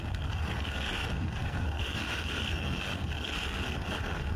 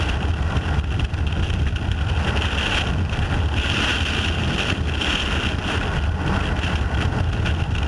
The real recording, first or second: second